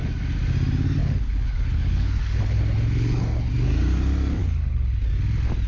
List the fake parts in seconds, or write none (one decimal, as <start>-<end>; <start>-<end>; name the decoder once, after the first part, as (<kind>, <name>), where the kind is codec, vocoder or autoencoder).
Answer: 1.0-3.5 (codec, HILCodec); 4.4-5.0